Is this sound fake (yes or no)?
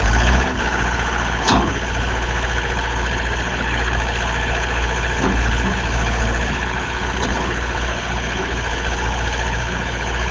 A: yes